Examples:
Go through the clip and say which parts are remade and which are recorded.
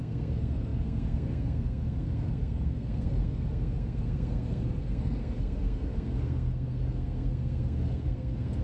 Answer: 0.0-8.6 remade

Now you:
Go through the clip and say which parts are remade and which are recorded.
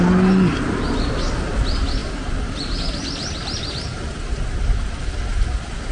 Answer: 0.0-5.9 recorded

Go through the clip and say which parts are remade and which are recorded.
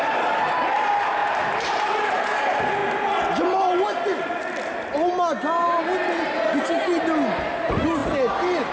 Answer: 0.0-8.7 recorded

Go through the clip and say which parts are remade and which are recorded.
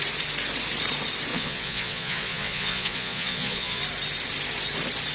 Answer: 0.0-1.3 recorded; 1.3-3.8 remade; 3.8-5.1 recorded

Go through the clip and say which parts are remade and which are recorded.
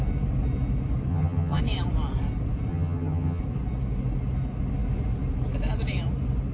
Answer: 0.0-1.1 recorded; 1.1-1.6 remade; 1.6-2.7 recorded; 2.7-3.4 remade; 3.4-6.5 recorded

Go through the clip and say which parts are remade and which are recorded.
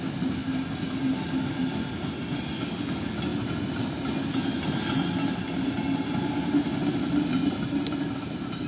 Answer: 0.0-8.7 recorded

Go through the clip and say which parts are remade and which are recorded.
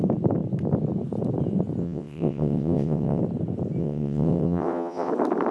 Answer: 0.0-1.8 recorded; 1.8-3.2 remade; 3.2-3.8 recorded; 3.8-5.1 remade; 5.1-5.5 recorded